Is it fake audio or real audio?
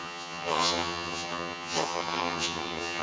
fake